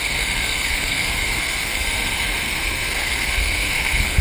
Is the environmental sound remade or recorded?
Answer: remade